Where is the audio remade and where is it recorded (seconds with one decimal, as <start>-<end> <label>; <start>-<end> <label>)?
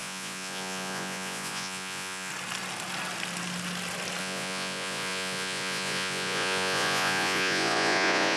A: 0.0-2.3 remade; 2.3-4.2 recorded; 4.2-8.4 remade